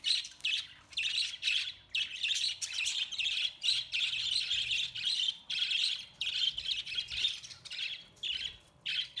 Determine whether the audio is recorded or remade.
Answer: remade